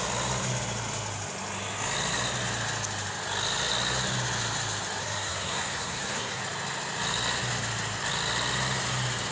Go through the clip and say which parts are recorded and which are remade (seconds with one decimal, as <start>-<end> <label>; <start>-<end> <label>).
0.0-5.0 recorded; 5.0-6.4 remade; 6.4-9.3 recorded